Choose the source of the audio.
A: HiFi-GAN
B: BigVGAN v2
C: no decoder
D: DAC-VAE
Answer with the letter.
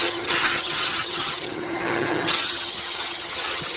A